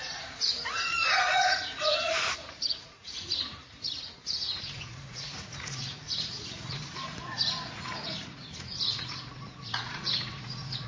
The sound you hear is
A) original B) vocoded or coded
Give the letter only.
B